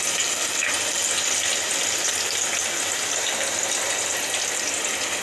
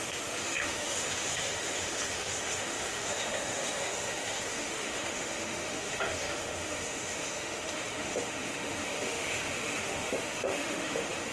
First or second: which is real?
first